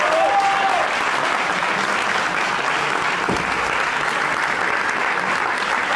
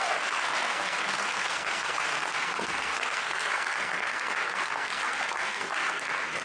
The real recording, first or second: first